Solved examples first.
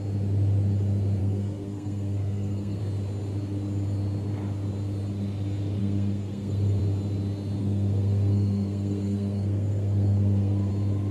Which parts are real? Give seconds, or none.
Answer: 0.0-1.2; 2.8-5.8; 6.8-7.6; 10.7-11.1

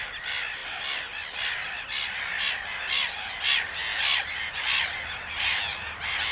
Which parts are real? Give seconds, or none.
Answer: 0.0-6.3

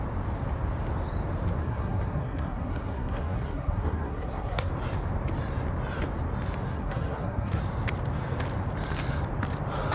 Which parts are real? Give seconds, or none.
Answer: 0.0-1.6; 4.7-6.7; 7.6-9.9

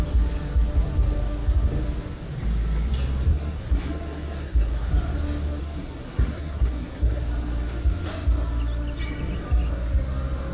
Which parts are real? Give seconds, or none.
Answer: 0.0-3.3; 4.9-5.6; 7.2-10.5